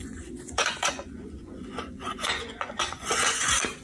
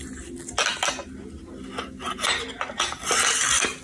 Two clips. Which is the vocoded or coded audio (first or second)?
first